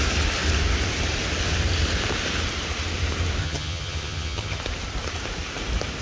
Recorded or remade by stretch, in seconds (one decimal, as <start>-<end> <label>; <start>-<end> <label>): 0.0-3.4 recorded; 3.4-4.6 remade; 4.6-6.0 recorded